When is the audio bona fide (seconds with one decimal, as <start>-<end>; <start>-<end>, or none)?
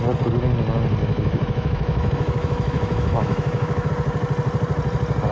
0.0-1.0; 3.9-5.3